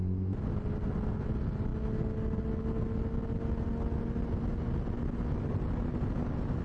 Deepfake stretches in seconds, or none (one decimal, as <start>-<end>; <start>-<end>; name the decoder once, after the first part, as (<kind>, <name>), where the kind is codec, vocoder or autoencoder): none